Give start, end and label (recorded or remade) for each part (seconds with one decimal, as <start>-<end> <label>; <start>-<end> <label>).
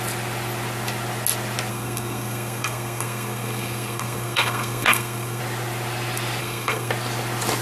0.0-1.7 recorded; 1.7-5.4 remade; 5.4-6.4 recorded; 6.4-6.9 remade; 6.9-7.6 recorded